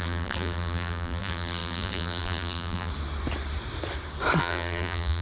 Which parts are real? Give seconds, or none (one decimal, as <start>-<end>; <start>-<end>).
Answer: 2.9-4.4